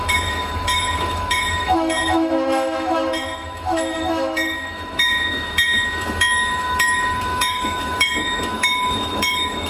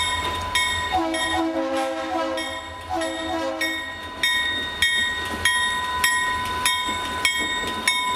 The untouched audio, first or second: second